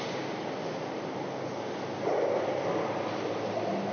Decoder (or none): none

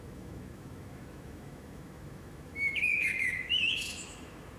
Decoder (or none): autoencoder, DAC-VAE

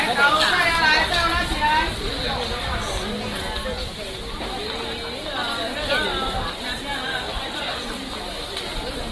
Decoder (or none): none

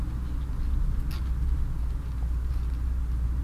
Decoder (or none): none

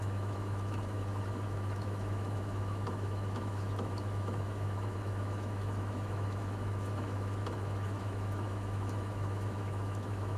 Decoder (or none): autoencoder, DAC-VAE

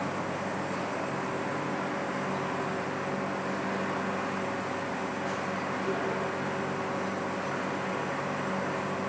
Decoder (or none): none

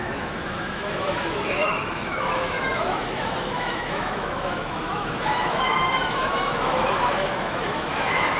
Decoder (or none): autoencoder, DAC-VAE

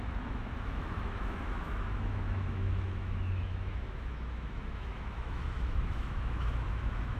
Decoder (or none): autoencoder, DAC-VAE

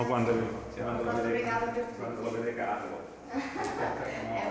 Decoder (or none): none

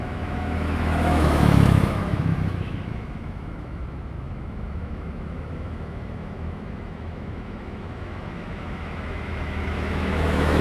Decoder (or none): autoencoder, DAC-VAE